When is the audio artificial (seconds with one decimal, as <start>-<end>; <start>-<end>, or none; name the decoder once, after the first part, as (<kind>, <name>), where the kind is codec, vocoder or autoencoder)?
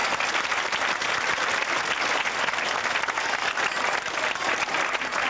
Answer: none